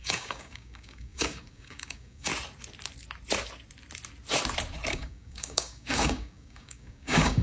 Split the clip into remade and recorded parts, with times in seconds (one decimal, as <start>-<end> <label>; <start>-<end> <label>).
0.0-2.3 remade; 2.3-4.9 recorded; 4.9-7.4 remade